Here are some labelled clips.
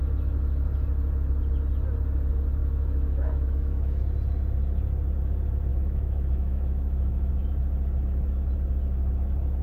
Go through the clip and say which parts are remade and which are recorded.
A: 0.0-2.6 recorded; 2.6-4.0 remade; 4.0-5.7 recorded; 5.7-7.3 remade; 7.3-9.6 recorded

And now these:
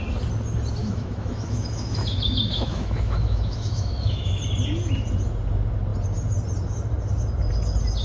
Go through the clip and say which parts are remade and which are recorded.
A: 0.0-0.8 recorded; 0.8-4.4 remade; 4.4-8.0 recorded